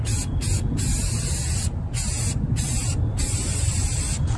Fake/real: real